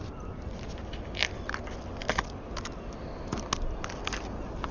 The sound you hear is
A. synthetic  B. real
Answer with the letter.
B